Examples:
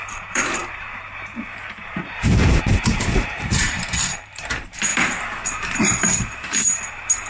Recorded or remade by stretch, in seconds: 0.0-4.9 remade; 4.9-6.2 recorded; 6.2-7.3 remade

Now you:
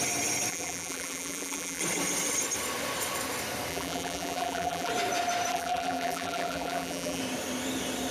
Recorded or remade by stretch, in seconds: 0.0-0.5 recorded; 0.5-1.8 remade; 1.8-3.7 recorded; 3.7-4.9 remade; 4.9-5.5 recorded; 5.5-7.2 remade; 7.2-8.1 recorded

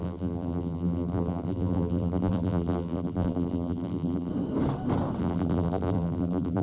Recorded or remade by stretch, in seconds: 0.0-4.3 remade; 4.3-5.2 recorded; 5.2-6.6 remade

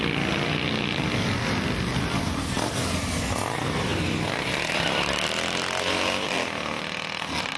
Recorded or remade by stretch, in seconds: 0.0-7.6 recorded